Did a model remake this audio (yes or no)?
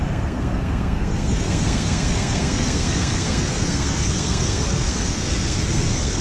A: yes